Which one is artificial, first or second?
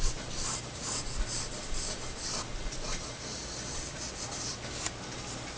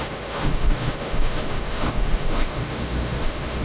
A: second